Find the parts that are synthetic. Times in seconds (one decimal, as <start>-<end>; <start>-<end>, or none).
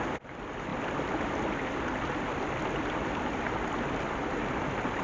none